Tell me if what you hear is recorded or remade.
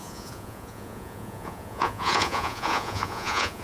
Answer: remade